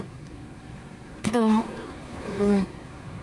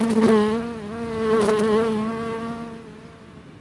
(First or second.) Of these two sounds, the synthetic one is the first